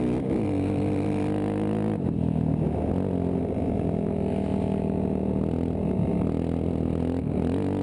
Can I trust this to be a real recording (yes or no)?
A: yes